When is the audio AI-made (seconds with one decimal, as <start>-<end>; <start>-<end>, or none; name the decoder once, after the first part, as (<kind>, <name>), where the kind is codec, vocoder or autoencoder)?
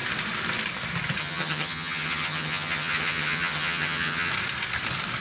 1.2-4.3 (vocoder, HiFi-GAN)